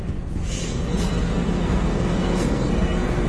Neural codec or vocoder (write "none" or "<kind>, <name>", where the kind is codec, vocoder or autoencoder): codec, SNAC